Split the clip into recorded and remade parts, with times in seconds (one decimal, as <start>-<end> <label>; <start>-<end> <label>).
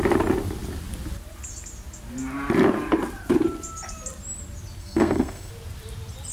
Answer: 0.0-4.8 recorded; 4.8-5.5 remade; 5.5-6.3 recorded